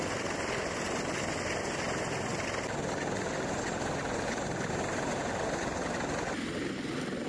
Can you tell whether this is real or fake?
real